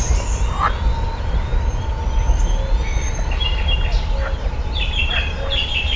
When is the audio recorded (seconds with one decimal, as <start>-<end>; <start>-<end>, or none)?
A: 0.0-6.0